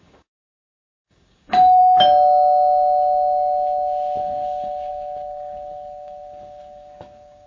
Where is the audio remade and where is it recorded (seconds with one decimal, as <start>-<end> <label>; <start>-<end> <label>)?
0.0-1.8 remade; 1.8-4.2 recorded; 4.2-7.5 remade